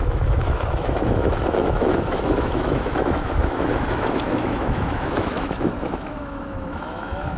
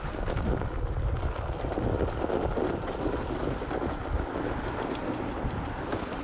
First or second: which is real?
second